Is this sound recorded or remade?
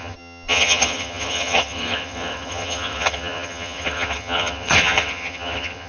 remade